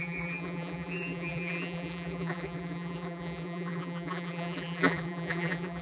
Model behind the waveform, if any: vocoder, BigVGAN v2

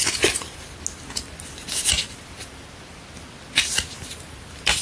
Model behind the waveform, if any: none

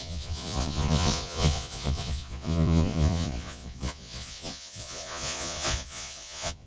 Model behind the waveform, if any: vocoder, Vocos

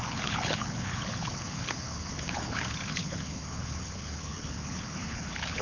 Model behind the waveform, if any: codec, HILCodec